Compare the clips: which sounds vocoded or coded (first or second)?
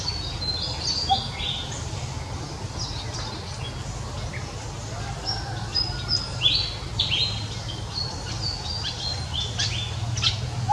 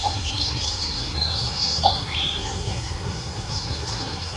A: second